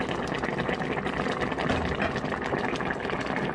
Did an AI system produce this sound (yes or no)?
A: no